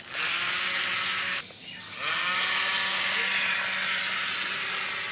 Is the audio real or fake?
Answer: real